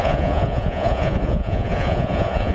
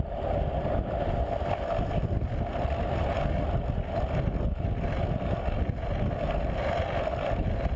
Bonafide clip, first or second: second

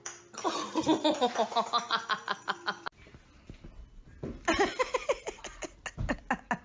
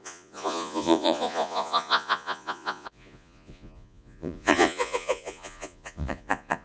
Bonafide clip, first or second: first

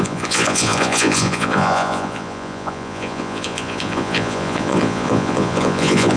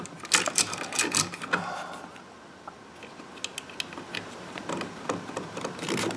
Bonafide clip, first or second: second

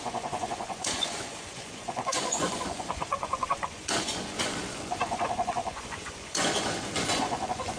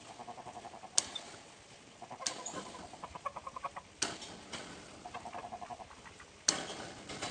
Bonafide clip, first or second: second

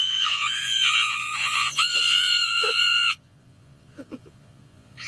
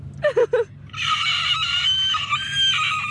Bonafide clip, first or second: second